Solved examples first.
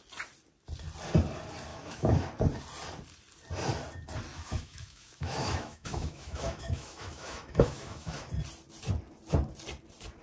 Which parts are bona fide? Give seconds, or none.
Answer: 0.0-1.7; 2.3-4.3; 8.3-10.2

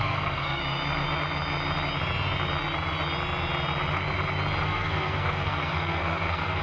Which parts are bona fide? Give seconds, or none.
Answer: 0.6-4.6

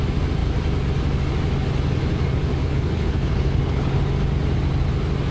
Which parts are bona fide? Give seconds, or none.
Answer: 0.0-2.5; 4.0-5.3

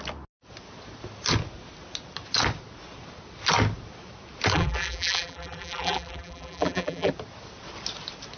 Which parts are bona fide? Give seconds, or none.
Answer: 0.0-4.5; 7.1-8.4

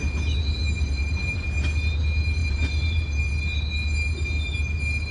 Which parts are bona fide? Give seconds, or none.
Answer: 0.0-0.6; 1.6-2.4; 3.3-5.1

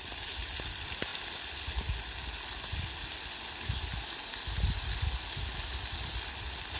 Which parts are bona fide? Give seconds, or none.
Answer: 0.0-6.8